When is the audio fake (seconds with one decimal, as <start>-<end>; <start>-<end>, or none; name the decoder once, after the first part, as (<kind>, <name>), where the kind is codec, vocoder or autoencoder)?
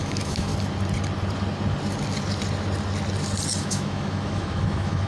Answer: 0.0-0.5 (autoencoder, DAC-VAE); 3.6-5.1